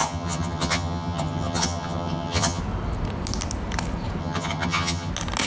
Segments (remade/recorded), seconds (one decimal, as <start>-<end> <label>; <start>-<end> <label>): 0.0-2.6 remade; 2.6-4.2 recorded; 4.2-5.1 remade; 5.1-5.5 recorded